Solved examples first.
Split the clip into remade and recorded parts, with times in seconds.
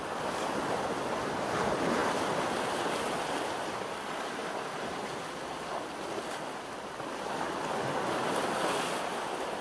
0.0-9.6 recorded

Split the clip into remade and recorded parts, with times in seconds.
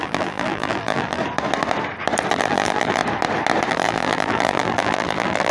0.0-1.2 remade; 1.2-2.3 recorded; 2.3-3.0 remade; 3.0-3.7 recorded; 3.7-5.5 remade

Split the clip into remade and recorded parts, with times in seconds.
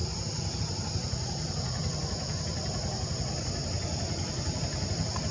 0.0-5.3 recorded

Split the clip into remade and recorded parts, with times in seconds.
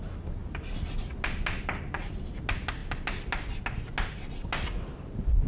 0.0-5.5 recorded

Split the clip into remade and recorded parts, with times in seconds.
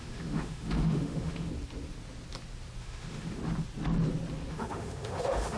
0.0-1.5 remade; 1.5-2.8 recorded; 2.8-3.4 remade; 3.4-4.5 recorded; 4.5-5.6 remade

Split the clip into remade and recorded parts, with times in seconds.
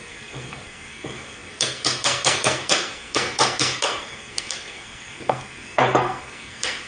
0.0-6.9 remade